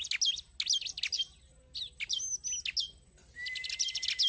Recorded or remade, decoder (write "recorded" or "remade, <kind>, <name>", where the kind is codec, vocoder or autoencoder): recorded